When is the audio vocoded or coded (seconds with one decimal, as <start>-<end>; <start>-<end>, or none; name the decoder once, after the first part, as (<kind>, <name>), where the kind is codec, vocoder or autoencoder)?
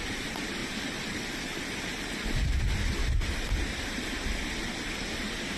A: none